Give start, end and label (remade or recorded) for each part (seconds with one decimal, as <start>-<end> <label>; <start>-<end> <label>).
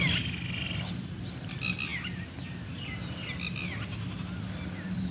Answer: 0.0-5.1 recorded